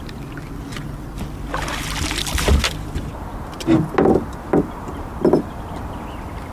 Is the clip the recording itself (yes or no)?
yes